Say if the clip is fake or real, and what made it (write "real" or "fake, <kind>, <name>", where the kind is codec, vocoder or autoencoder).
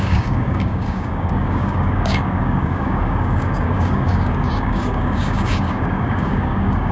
fake, codec, DAC